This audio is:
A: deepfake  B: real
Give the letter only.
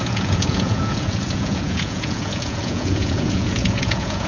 A